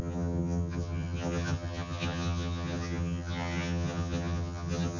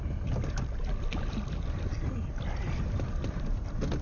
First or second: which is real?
second